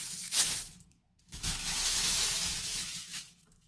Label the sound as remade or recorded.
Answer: remade